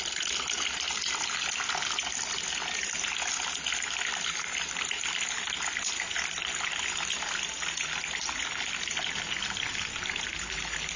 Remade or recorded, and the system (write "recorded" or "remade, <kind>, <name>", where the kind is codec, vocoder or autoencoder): recorded